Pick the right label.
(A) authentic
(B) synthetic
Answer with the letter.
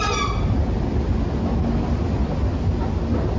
A